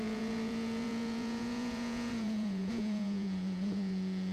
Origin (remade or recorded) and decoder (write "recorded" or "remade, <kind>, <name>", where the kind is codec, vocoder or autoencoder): remade, vocoder, Vocos